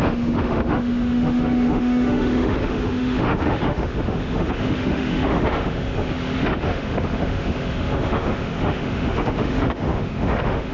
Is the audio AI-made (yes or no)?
yes